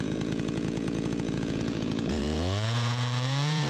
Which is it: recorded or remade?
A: remade